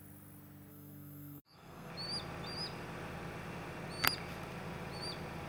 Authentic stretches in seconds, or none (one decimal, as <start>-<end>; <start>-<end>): 0.0-0.7; 1.9-5.5